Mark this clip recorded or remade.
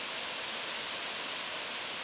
recorded